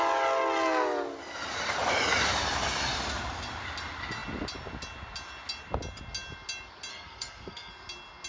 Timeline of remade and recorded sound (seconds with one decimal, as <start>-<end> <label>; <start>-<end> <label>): 0.0-6.9 recorded; 6.9-7.7 remade; 7.7-8.3 recorded

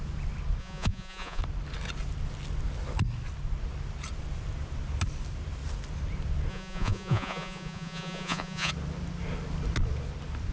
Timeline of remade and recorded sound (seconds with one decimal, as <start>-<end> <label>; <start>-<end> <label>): 0.0-0.6 recorded; 0.6-1.4 remade; 1.4-6.5 recorded; 6.5-8.7 remade; 8.7-10.5 recorded

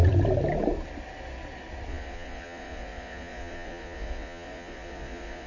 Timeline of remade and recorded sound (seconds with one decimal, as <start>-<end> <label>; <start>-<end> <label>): 0.0-1.9 recorded; 1.9-5.5 remade

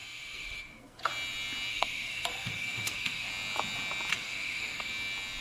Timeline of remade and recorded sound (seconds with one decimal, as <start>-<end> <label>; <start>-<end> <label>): 0.0-1.1 remade; 1.1-1.7 recorded; 1.7-3.3 remade; 3.3-4.1 recorded; 4.1-4.9 remade; 4.9-5.4 recorded

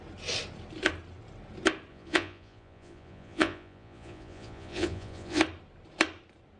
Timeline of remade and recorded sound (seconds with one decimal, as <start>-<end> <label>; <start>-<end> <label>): 0.0-1.9 recorded; 1.9-5.4 remade; 5.4-6.6 recorded